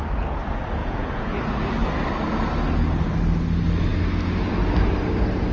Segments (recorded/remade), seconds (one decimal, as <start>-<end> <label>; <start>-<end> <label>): 0.0-0.8 recorded; 0.8-1.4 remade; 1.4-5.5 recorded